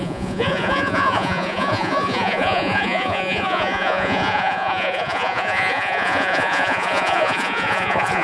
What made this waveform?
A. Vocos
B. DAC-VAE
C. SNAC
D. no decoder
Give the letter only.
A